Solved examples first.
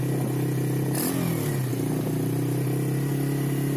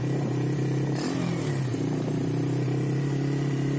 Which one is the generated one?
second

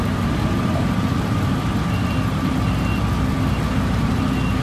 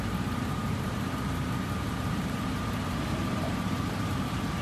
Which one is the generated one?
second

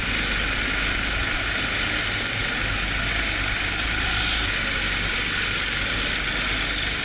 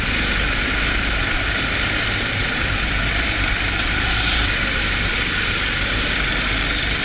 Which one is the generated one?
second